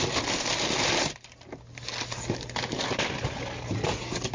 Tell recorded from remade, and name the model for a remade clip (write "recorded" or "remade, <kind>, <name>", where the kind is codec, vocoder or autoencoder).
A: recorded